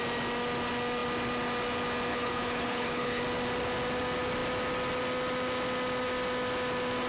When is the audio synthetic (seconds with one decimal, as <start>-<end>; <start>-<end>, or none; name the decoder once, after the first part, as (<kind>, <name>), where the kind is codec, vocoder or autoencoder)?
2.1-3.2 (codec, HILCodec)